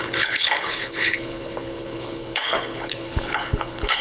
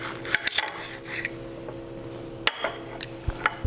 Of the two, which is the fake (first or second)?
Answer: first